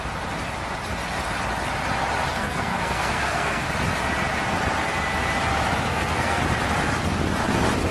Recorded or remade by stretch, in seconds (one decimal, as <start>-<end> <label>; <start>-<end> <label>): 0.0-2.3 recorded; 2.3-3.7 remade; 3.7-5.9 recorded; 5.9-6.4 remade; 6.4-7.9 recorded